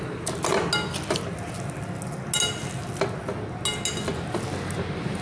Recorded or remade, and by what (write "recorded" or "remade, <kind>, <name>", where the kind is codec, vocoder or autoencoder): recorded